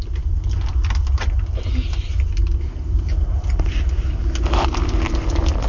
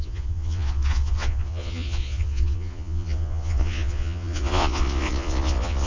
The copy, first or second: second